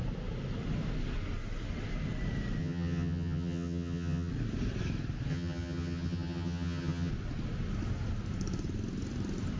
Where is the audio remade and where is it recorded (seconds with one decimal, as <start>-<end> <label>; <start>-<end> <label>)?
0.0-2.6 recorded; 2.6-4.3 remade; 4.3-5.3 recorded; 5.3-7.1 remade; 7.1-9.6 recorded

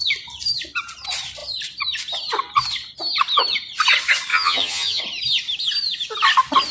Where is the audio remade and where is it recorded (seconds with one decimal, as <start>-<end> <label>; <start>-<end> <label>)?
0.0-4.3 recorded; 4.3-5.0 remade; 5.0-6.7 recorded